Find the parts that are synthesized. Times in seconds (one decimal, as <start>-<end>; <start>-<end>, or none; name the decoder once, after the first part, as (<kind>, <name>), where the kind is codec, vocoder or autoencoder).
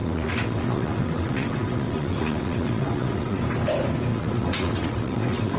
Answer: 0.0-3.4 (vocoder, WaveNeXt); 4.1-5.6